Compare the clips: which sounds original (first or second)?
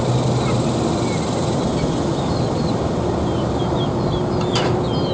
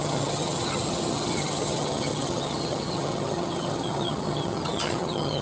first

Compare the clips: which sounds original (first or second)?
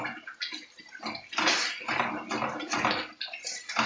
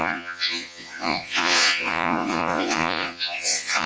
first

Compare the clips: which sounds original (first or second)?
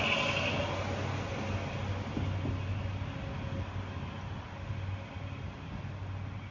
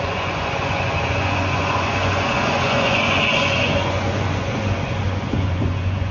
first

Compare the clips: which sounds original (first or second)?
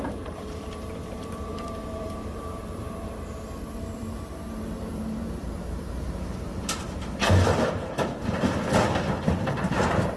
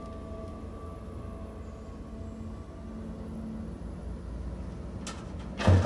second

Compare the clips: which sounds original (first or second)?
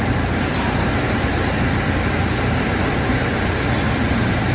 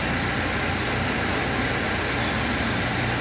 second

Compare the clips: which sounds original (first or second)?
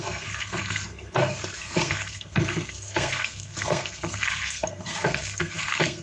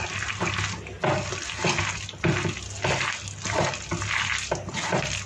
second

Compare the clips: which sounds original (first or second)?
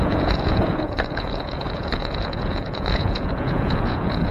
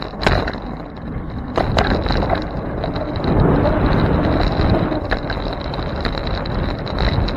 second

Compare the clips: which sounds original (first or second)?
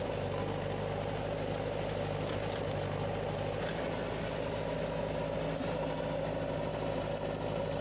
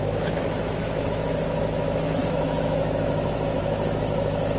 first